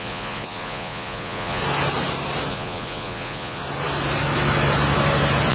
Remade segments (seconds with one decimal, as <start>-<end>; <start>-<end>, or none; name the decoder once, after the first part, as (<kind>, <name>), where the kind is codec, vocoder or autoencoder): 0.0-1.6 (vocoder, Vocos); 2.5-3.6